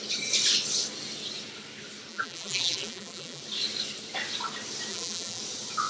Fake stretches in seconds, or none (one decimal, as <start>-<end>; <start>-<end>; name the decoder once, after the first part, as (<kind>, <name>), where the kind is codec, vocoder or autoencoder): 2.1-3.4 (vocoder, BigVGAN v2); 4.9-5.4